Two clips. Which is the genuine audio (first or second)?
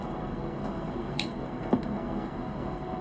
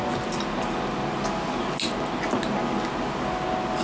second